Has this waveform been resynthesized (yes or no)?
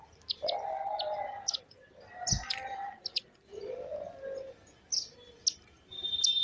no